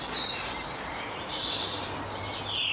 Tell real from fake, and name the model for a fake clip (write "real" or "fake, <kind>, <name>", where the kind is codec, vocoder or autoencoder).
real